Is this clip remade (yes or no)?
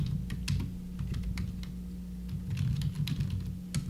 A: no